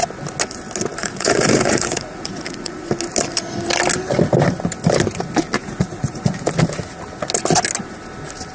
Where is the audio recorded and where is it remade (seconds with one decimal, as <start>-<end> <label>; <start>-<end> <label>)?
0.0-1.0 recorded; 1.0-2.9 remade; 2.9-5.6 recorded; 5.6-6.5 remade; 6.5-8.5 recorded